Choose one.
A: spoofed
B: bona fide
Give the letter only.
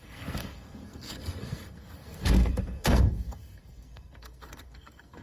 A